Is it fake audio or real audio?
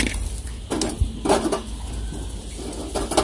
real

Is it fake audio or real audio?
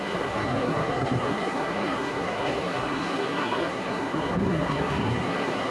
fake